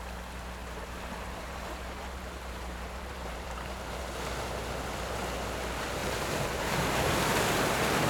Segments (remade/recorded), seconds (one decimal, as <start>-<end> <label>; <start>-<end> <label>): 0.0-0.6 recorded; 0.6-4.0 remade; 4.0-6.0 recorded; 6.0-8.1 remade